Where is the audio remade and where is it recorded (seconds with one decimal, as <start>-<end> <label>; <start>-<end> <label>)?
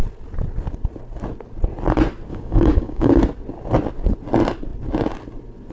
0.0-2.3 recorded; 2.3-3.1 remade; 3.1-5.7 recorded